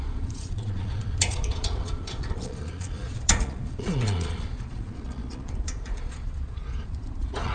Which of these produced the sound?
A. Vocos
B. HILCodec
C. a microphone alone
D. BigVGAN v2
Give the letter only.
A